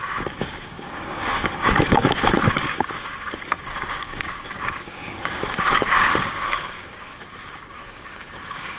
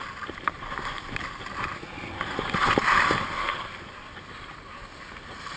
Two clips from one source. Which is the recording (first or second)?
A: second